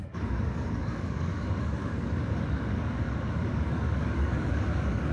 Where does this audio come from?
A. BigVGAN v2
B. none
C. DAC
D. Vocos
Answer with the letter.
C